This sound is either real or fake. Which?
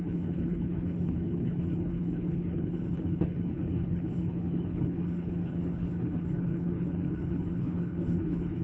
fake